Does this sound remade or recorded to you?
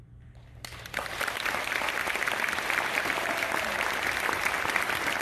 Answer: recorded